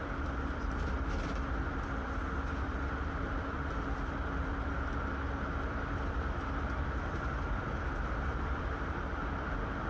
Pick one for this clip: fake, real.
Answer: fake